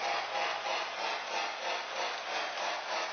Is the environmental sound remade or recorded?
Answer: recorded